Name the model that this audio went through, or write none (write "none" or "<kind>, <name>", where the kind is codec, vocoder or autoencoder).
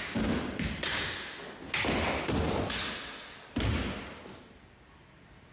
none